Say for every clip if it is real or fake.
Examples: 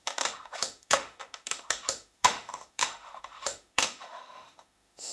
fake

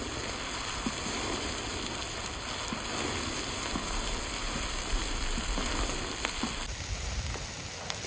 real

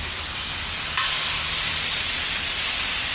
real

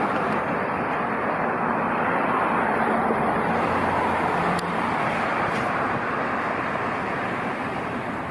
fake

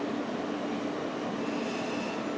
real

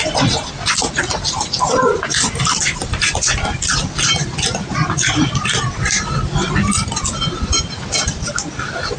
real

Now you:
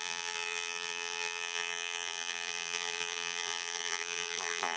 fake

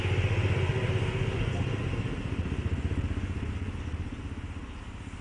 real